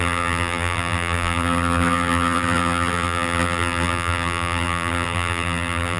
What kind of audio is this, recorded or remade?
remade